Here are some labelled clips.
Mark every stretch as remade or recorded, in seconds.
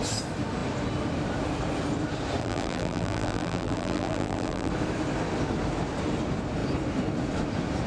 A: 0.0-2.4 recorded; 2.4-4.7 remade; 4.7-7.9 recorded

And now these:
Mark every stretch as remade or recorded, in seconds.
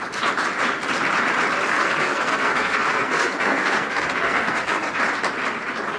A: 0.0-1.7 recorded; 1.7-5.0 remade; 5.0-6.0 recorded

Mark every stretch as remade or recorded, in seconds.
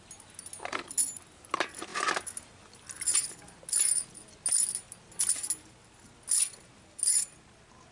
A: 0.0-7.9 recorded